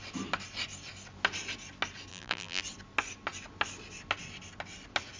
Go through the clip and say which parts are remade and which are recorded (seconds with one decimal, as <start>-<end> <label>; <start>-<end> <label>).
0.0-2.1 recorded; 2.1-2.6 remade; 2.6-5.2 recorded